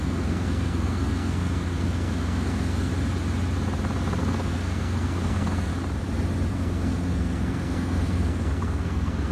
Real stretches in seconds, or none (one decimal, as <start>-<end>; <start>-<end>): 2.9-4.2; 5.7-6.5